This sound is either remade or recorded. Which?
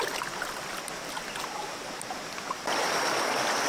recorded